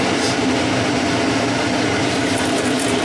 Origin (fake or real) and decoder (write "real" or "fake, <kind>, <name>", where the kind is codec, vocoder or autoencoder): real